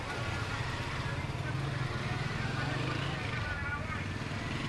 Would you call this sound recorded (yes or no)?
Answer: yes